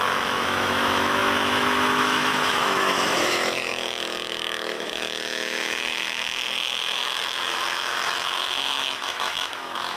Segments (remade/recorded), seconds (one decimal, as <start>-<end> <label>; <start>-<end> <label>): 0.0-10.0 remade